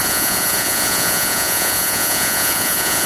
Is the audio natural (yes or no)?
no